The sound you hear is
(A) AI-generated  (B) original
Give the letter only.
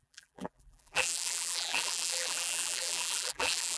A